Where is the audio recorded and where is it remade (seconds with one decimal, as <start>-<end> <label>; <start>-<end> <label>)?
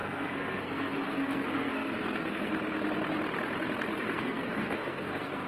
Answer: 0.0-2.5 remade; 2.5-3.9 recorded; 3.9-5.5 remade